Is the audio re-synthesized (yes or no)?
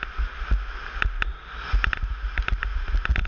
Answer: no